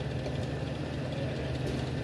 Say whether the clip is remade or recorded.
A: recorded